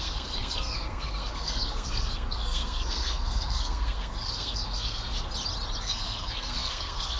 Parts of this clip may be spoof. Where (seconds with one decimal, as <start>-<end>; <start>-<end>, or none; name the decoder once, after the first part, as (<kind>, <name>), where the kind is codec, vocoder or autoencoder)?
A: 0.0-5.3 (codec, SNAC); 5.8-7.2